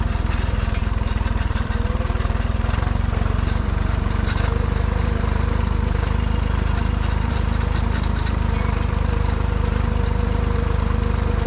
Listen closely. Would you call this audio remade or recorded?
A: remade